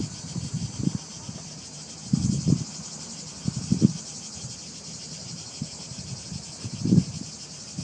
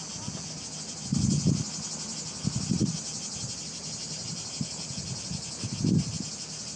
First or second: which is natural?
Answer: second